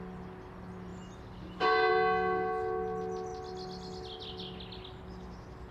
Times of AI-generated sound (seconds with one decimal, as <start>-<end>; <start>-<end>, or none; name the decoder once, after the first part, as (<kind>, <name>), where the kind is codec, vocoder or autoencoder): none